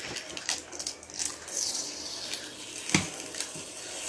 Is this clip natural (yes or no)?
yes